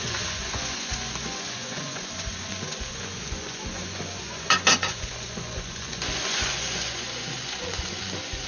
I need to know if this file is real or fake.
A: fake